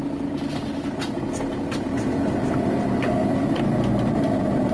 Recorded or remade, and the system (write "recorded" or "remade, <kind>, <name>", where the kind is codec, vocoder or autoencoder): recorded